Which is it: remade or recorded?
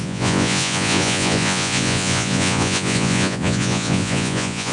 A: remade